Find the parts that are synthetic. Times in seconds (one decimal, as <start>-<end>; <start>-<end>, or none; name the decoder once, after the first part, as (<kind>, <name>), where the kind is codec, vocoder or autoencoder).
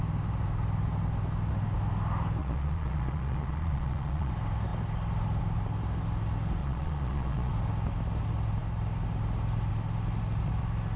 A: 2.4-4.3 (vocoder, Vocos); 6.6-7.5